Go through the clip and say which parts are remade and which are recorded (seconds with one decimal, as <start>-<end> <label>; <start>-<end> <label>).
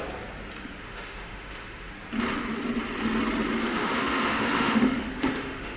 0.0-0.8 recorded; 0.8-1.9 remade; 1.9-3.6 recorded; 3.6-5.8 remade